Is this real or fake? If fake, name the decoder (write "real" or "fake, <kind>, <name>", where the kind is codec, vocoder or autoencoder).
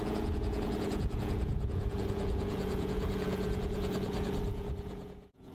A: fake, vocoder, Vocos